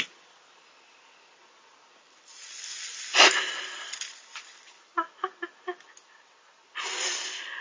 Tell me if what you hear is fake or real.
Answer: real